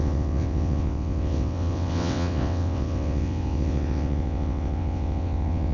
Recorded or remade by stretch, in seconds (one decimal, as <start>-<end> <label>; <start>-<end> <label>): 0.0-5.7 remade